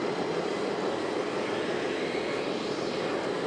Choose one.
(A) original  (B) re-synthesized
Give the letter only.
A